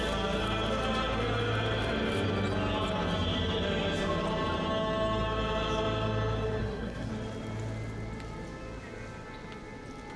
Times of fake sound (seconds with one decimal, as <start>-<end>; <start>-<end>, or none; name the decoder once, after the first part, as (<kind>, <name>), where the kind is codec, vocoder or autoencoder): 6.6-7.1 (codec, SNAC)